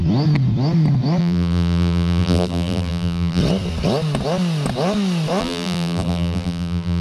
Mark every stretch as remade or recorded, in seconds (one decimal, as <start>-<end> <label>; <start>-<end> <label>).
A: 0.0-1.2 recorded; 1.2-3.4 remade; 3.4-5.4 recorded; 5.4-7.0 remade